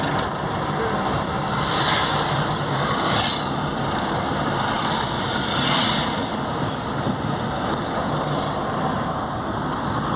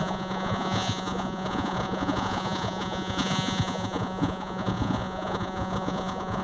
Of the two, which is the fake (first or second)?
second